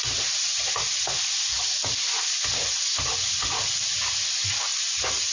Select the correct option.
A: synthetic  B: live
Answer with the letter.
B